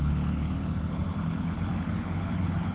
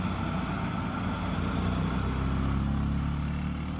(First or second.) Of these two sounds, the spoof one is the first